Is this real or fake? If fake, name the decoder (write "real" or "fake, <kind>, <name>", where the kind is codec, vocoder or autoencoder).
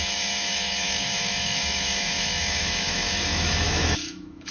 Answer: fake, autoencoder, DAC-VAE